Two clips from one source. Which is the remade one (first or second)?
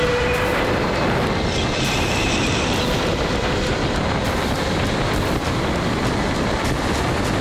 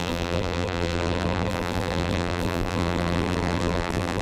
second